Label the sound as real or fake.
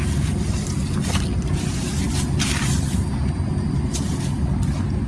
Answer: real